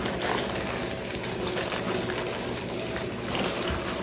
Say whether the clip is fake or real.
real